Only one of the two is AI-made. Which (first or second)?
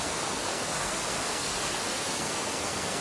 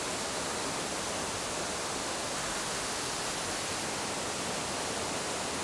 first